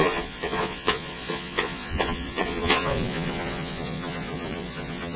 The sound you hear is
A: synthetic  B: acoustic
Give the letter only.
A